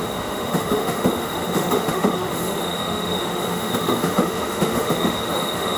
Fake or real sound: fake